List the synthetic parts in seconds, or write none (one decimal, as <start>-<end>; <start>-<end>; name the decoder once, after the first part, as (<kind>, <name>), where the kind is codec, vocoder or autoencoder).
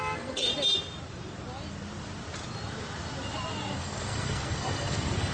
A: 0.0-0.5 (codec, SNAC); 3.7-5.3